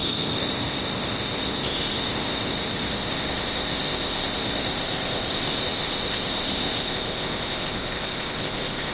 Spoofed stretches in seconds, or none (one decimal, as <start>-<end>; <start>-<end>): 0.0-8.9